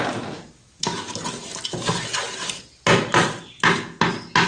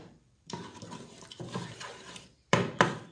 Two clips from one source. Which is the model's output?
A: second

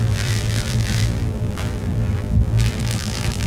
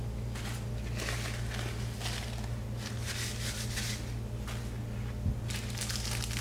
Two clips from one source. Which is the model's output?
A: first